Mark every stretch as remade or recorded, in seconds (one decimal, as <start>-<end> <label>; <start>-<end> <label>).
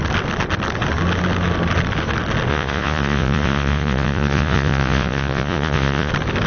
0.0-2.5 recorded; 2.5-6.1 remade; 6.1-6.5 recorded